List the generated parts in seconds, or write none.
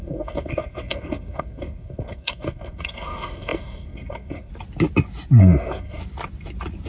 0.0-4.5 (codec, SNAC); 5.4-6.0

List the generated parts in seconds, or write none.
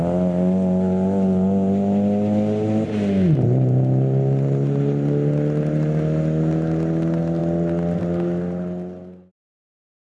none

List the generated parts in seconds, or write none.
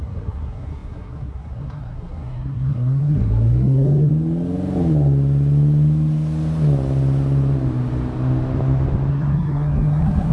0.0-4.1 (codec, SNAC); 9.1-10.3